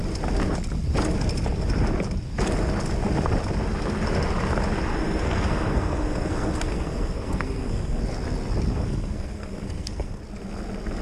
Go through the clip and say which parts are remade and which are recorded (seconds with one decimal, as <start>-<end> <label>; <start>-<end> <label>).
0.0-4.9 recorded; 4.9-8.0 remade; 8.0-8.7 recorded; 8.7-10.2 remade; 10.2-11.0 recorded